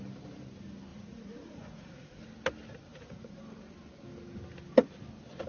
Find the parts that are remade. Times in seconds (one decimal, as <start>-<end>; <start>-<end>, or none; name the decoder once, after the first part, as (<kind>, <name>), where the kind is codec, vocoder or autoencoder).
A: 0.9-2.2 (vocoder, Vocos); 2.9-3.4